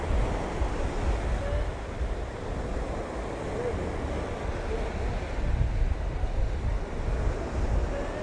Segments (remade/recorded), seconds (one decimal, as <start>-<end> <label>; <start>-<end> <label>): 0.0-8.2 recorded